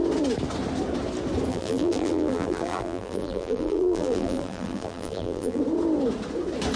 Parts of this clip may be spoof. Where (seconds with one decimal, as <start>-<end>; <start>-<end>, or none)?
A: 1.5-5.6